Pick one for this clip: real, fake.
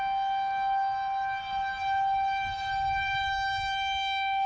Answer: real